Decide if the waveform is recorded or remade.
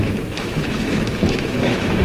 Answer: remade